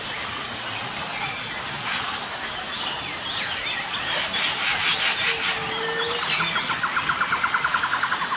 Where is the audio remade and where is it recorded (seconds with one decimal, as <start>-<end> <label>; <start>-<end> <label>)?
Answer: 0.0-8.4 recorded